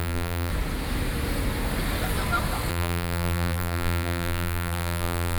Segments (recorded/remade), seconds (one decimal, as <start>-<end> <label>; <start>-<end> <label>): 0.0-0.5 remade; 0.5-2.7 recorded; 2.7-5.4 remade